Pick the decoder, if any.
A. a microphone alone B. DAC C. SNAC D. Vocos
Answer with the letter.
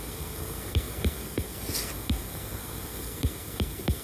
C